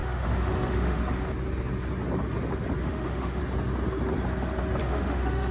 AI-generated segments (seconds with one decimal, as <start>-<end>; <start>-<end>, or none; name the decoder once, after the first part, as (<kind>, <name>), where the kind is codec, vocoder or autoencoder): 0.0-1.0 (autoencoder, DAC-VAE); 2.8-3.4; 4.8-5.5